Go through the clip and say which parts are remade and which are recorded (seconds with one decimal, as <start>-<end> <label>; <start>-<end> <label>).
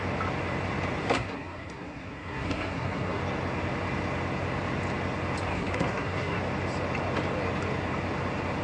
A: 0.0-1.0 recorded; 1.0-3.2 remade; 3.2-5.5 recorded; 5.5-6.4 remade; 6.4-8.6 recorded